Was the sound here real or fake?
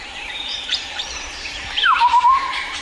fake